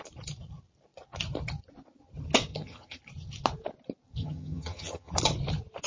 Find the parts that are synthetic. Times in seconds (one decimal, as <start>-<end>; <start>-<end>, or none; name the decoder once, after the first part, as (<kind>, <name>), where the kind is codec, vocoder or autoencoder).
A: 2.5-3.0 (vocoder, HiFi-GAN); 4.2-5.1